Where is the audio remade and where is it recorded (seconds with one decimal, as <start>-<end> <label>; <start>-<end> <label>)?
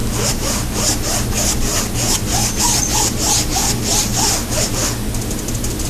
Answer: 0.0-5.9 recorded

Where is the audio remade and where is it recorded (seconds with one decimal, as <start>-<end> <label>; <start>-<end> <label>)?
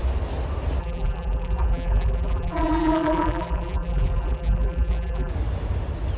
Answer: 0.0-0.8 recorded; 0.8-5.3 remade; 5.3-6.2 recorded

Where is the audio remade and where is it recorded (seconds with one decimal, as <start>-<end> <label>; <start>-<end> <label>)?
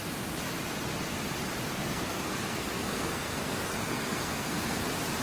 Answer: 0.0-1.7 recorded; 1.7-4.8 remade; 4.8-5.2 recorded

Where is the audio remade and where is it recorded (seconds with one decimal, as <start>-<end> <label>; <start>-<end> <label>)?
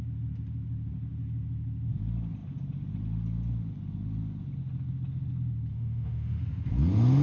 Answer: 0.0-5.7 recorded; 5.7-6.4 remade; 6.4-7.2 recorded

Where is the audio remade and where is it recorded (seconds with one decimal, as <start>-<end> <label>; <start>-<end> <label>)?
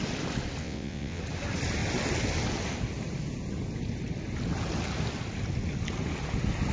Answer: 0.0-0.6 recorded; 0.6-1.2 remade; 1.2-6.7 recorded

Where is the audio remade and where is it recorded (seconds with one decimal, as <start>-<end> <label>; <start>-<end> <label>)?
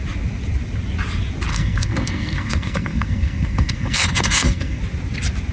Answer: 0.0-1.5 recorded; 1.5-4.8 remade; 4.8-5.5 recorded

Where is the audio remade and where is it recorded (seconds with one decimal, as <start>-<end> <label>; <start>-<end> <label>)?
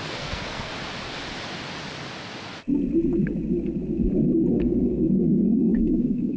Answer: 0.0-0.7 remade; 0.7-4.5 recorded; 4.5-6.4 remade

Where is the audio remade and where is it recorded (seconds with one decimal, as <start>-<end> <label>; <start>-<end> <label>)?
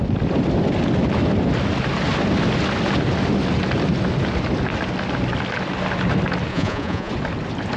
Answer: 0.0-6.5 recorded; 6.5-7.1 remade; 7.1-7.8 recorded